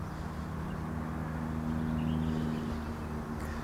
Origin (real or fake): real